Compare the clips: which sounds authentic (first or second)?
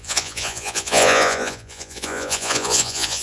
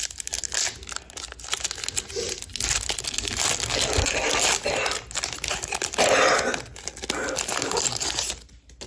second